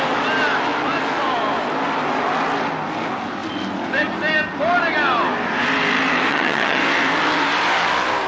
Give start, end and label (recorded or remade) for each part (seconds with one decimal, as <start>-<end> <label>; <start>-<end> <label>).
0.0-6.3 recorded; 6.3-6.8 remade; 6.8-8.3 recorded